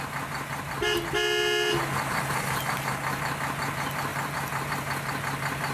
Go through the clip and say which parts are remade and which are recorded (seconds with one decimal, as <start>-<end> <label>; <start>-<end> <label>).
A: 0.0-4.1 recorded; 4.1-4.7 remade; 4.7-5.7 recorded